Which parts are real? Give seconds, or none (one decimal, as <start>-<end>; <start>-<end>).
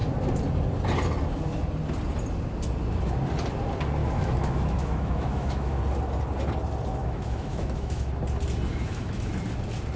0.0-4.0; 5.8-7.0; 8.1-8.7; 9.3-10.0